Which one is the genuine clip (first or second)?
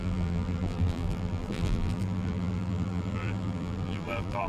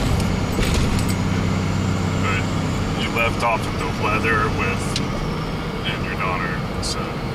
second